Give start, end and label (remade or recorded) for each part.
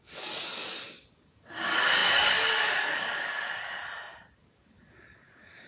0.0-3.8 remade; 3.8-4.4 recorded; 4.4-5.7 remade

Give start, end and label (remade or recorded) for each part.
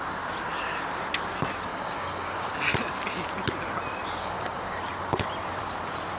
0.0-1.7 recorded; 1.7-2.5 remade; 2.5-4.2 recorded; 4.2-4.8 remade; 4.8-6.2 recorded